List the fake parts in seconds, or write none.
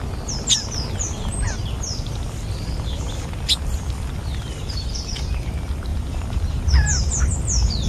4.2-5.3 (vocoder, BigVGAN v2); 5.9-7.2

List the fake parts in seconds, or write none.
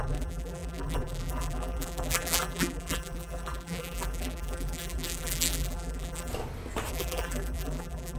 0.0-6.3 (vocoder, BigVGAN v2); 6.9-8.2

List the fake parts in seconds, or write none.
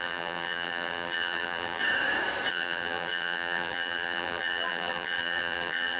0.0-1.8 (vocoder, BigVGAN v2); 2.5-6.0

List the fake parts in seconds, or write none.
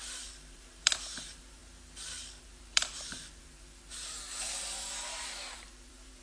0.0-1.6 (vocoder, BigVGAN v2); 2.4-6.2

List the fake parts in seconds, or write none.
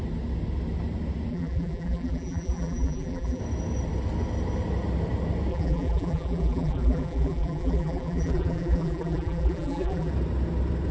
1.3-3.4 (vocoder, BigVGAN v2); 5.5-10.1